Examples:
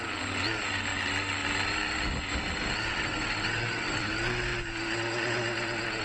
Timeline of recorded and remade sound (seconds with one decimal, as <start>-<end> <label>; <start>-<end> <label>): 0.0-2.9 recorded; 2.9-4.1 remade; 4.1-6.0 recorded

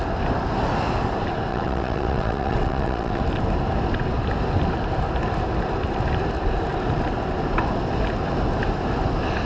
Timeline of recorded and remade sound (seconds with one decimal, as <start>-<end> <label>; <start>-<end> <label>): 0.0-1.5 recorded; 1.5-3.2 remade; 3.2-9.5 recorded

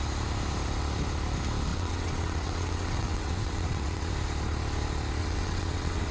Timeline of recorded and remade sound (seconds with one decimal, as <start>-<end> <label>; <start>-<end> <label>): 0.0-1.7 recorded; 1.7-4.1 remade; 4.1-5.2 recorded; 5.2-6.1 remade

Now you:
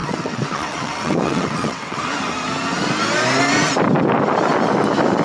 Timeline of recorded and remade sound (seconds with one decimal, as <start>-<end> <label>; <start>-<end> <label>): 0.0-2.0 remade; 2.0-5.2 recorded

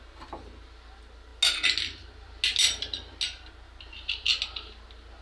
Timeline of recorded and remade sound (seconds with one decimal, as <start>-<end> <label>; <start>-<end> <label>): 0.0-5.2 recorded